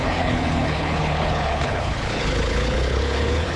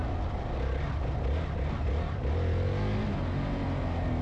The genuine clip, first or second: second